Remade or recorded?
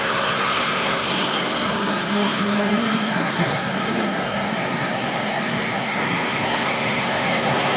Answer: remade